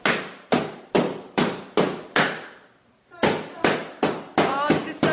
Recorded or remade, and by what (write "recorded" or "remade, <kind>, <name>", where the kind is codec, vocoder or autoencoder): recorded